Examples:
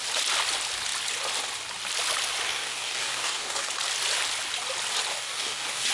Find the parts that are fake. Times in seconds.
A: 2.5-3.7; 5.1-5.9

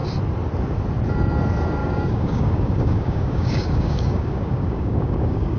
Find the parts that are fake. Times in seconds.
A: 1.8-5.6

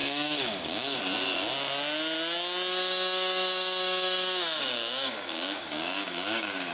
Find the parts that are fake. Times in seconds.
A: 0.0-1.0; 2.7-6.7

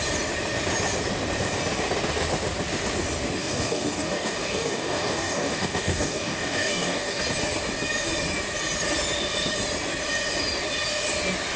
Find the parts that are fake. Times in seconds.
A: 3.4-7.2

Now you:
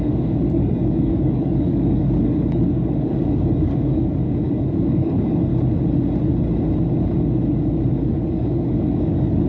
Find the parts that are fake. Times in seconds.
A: 0.0-5.5; 7.9-9.5

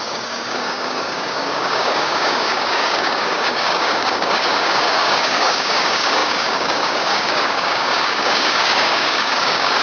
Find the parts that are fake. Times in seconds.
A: 0.0-9.8